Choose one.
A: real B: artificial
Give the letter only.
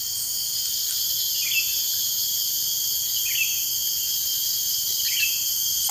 A